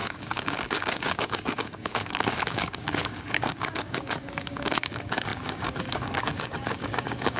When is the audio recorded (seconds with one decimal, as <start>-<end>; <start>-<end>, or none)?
none